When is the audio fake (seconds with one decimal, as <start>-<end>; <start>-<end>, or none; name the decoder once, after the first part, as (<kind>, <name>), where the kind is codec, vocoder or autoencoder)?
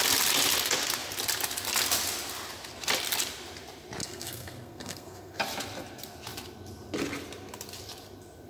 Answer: 4.0-5.4 (codec, SNAC)